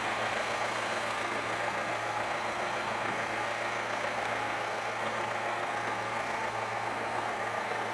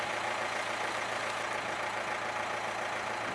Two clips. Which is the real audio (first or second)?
second